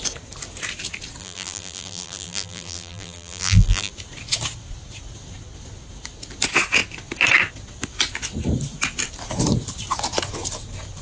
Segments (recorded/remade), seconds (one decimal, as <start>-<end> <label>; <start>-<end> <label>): 0.0-1.2 recorded; 1.2-3.9 remade; 3.9-11.0 recorded

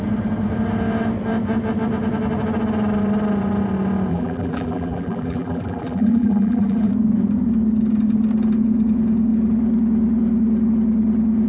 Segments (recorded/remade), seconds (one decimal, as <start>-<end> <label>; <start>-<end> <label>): 0.0-4.1 recorded; 4.1-6.9 remade; 6.9-11.5 recorded

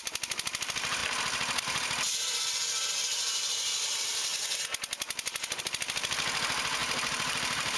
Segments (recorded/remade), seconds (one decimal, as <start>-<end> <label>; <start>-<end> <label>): 0.0-1.0 remade; 1.0-1.6 recorded; 1.6-4.3 remade; 4.3-5.6 recorded; 5.6-7.8 remade

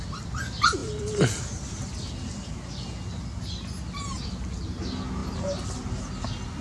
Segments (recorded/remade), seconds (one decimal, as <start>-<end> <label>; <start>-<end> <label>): 0.0-6.6 recorded